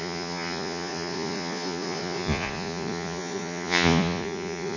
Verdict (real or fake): fake